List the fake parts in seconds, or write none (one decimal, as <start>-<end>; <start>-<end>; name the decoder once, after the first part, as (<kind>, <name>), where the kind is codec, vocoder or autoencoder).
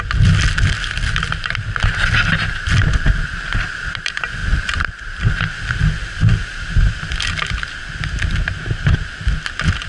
4.4-4.9 (vocoder, BigVGAN v2)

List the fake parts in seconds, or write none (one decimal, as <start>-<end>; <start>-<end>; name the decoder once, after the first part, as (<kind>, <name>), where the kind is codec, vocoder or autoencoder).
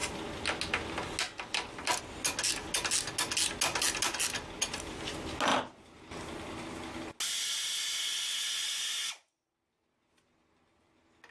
none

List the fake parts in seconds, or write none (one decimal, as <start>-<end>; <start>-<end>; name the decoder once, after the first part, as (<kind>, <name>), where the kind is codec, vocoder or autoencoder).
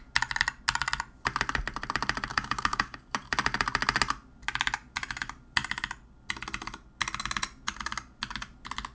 2.3-3.0 (codec, DAC)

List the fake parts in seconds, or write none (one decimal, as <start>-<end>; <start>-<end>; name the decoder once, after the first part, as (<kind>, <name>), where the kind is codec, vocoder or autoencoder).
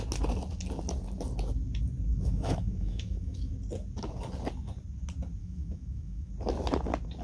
2.1-3.5 (autoencoder, DAC-VAE); 5.4-6.3